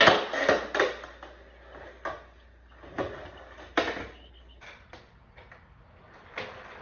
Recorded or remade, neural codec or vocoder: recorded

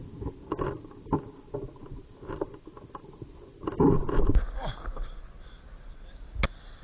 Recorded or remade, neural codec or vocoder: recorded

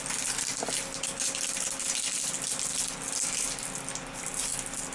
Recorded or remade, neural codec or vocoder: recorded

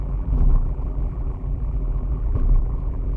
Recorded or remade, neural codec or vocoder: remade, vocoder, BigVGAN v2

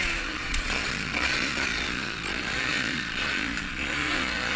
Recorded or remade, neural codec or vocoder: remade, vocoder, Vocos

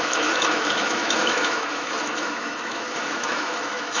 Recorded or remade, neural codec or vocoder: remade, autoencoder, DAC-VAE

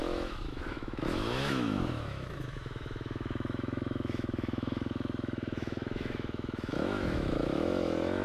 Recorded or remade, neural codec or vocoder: remade, autoencoder, DAC-VAE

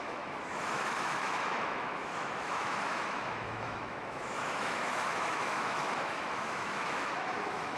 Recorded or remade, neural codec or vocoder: remade, autoencoder, DAC-VAE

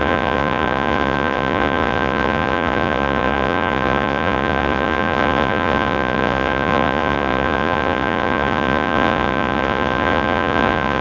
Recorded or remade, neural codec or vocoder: remade, vocoder, Vocos